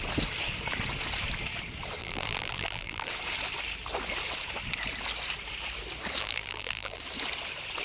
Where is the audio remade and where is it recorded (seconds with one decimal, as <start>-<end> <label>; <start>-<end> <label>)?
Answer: 0.0-2.0 recorded; 2.0-3.1 remade; 3.1-6.2 recorded; 6.2-7.0 remade; 7.0-7.8 recorded

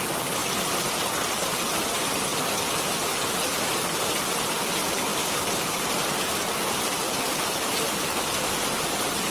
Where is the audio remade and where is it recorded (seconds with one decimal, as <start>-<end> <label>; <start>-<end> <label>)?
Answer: 0.0-5.1 recorded; 5.1-8.8 remade; 8.8-9.3 recorded

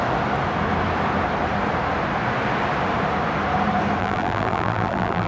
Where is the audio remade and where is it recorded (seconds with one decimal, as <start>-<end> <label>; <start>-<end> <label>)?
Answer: 0.0-4.0 recorded; 4.0-5.3 remade

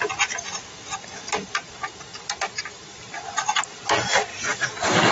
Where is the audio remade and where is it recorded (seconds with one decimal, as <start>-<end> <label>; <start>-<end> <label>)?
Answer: 0.0-5.1 recorded

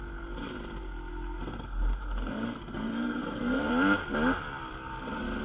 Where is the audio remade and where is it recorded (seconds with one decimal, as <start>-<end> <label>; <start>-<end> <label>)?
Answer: 0.0-1.1 recorded; 1.1-3.7 remade; 3.7-5.4 recorded